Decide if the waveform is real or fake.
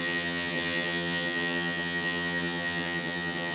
fake